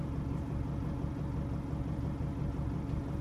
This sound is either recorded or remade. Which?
recorded